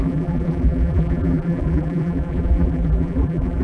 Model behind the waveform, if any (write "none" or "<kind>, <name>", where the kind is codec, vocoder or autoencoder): vocoder, BigVGAN v2